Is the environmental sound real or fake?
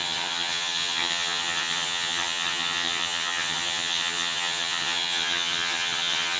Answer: fake